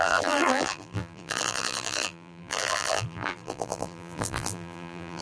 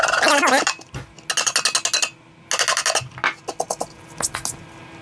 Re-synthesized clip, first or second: first